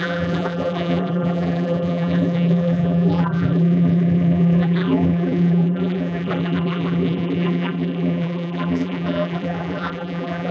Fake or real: fake